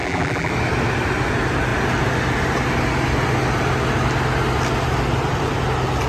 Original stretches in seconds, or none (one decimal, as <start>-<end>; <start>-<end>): 0.5-6.1